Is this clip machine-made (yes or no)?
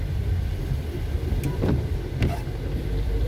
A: yes